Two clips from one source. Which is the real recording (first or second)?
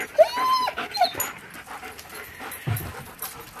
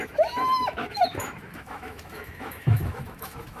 first